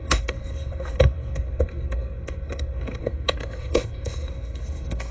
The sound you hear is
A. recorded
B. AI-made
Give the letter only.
B